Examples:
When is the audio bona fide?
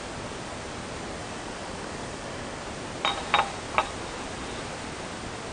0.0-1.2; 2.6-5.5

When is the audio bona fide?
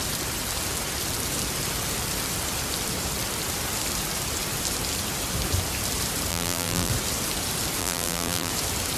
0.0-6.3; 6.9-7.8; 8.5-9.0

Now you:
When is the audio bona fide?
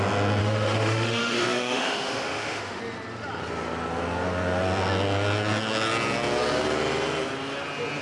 0.0-0.4; 2.8-8.0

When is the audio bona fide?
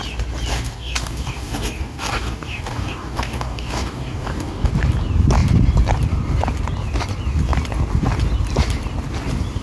0.0-0.5; 4.7-9.6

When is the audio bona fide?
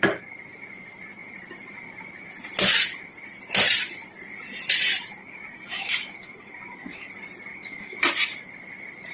0.0-5.2; 7.1-7.5; 8.0-9.1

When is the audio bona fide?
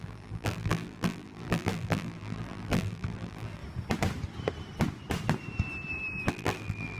3.6-6.3